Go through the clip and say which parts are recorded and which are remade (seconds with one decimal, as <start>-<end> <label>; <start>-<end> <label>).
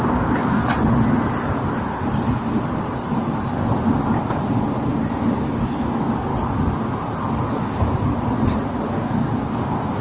0.0-0.6 remade; 0.6-5.8 recorded; 5.8-6.3 remade; 6.3-8.9 recorded; 8.9-10.0 remade